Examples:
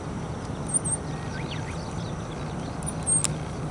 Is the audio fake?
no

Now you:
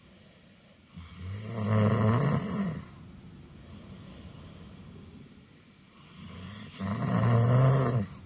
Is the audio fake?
no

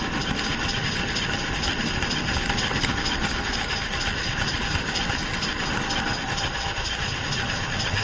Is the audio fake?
no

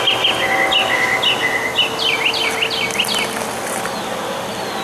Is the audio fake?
no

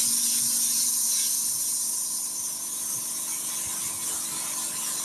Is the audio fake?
no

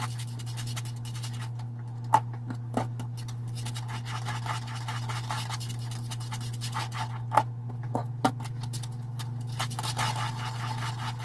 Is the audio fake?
no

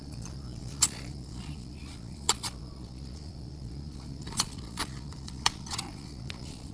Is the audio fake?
yes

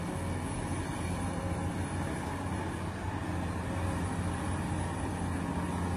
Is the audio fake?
no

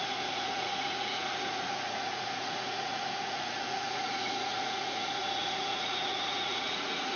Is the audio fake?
yes